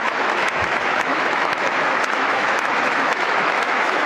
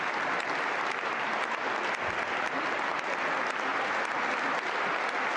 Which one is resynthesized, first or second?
first